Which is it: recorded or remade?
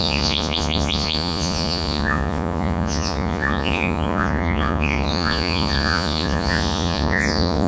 remade